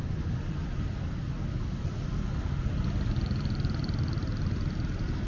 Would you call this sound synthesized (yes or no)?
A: no